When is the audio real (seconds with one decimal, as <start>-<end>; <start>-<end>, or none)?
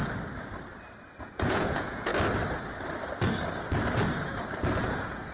0.0-1.2; 2.1-4.8